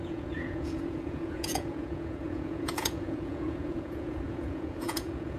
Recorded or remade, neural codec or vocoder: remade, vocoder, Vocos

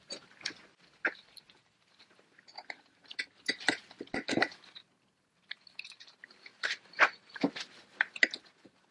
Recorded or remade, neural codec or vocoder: recorded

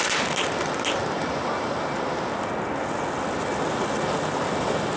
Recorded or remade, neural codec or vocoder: recorded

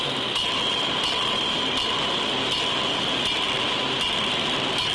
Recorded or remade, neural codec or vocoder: recorded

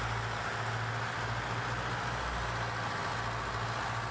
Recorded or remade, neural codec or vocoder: recorded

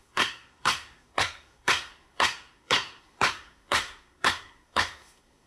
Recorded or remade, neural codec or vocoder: remade, codec, SNAC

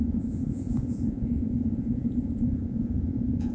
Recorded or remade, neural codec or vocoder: remade, vocoder, Vocos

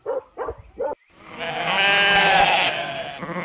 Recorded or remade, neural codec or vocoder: recorded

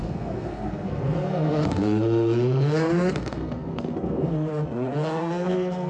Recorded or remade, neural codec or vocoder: remade, codec, SNAC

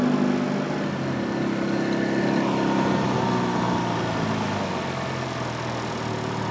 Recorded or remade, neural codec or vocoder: recorded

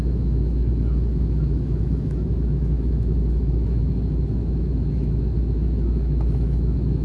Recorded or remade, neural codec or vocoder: remade, autoencoder, DAC-VAE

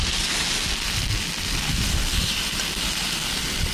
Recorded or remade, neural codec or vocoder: recorded